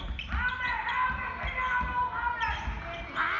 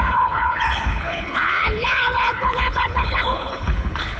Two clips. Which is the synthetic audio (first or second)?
second